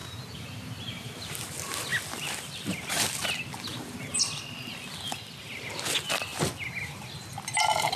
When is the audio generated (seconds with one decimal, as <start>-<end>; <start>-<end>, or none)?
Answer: 0.0-1.3; 3.7-4.2